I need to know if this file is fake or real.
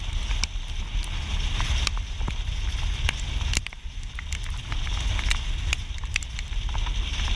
real